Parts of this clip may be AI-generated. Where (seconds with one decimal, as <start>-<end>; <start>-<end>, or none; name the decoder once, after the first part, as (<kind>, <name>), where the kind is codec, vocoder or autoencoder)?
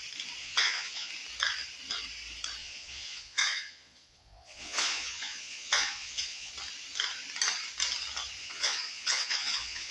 0.4-1.1 (vocoder, Vocos); 2.6-6.5; 8.4-9.9